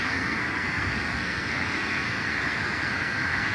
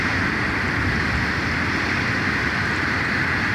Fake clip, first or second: first